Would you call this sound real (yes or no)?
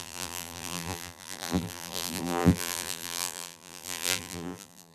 no